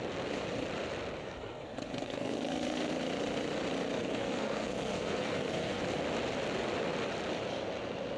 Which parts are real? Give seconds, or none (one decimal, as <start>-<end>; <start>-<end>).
0.0-1.2; 2.9-4.0; 5.8-8.2